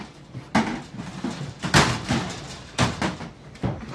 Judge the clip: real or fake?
real